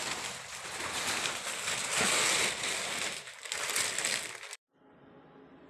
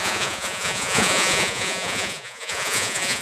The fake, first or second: second